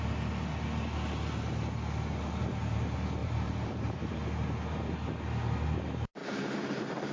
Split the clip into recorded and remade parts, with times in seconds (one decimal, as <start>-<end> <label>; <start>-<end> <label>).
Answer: 0.0-3.2 recorded; 3.2-4.1 remade; 4.1-6.2 recorded; 6.2-7.1 remade